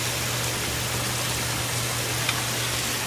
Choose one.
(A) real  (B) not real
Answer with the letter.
A